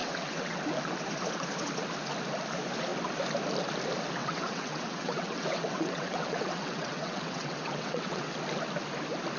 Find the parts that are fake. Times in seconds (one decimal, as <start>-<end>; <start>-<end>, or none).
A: 0.0-0.6; 4.2-8.3